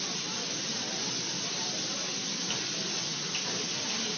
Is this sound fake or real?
real